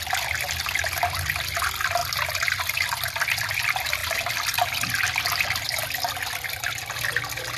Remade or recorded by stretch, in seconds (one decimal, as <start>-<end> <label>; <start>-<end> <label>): 0.0-7.6 recorded